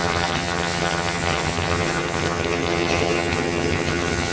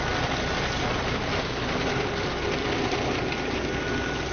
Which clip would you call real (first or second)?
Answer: second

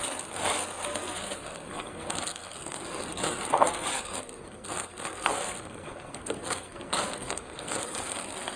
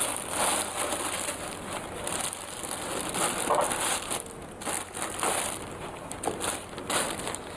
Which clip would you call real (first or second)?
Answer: second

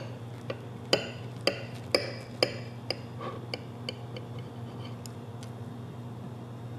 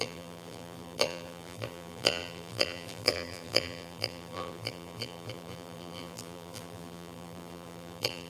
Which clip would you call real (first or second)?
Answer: first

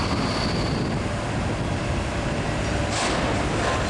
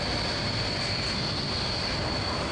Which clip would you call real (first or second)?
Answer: first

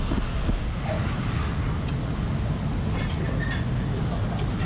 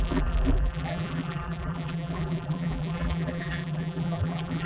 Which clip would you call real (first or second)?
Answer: first